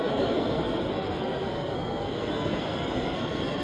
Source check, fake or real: fake